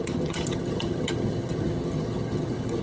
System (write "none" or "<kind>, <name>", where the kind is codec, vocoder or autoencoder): vocoder, HiFi-GAN